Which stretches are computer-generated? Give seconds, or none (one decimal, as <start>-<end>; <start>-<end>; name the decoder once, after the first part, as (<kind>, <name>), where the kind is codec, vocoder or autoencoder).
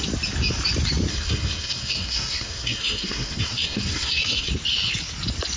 1.1-4.5 (codec, SNAC)